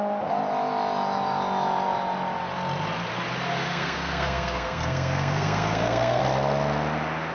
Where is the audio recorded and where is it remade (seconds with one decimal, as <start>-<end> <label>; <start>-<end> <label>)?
0.0-3.7 recorded; 3.7-6.2 remade; 6.2-7.3 recorded